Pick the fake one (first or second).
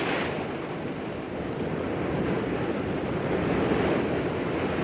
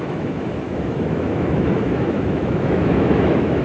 second